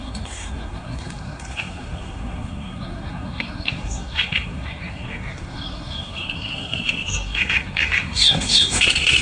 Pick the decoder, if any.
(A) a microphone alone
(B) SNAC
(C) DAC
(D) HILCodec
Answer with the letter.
B